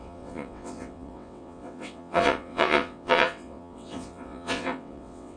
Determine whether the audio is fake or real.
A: fake